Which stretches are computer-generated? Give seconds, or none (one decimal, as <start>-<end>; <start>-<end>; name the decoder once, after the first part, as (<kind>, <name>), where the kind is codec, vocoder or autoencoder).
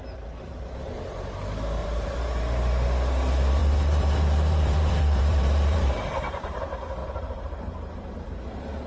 1.8-2.4 (vocoder, BigVGAN v2); 3.6-6.6; 7.0-8.3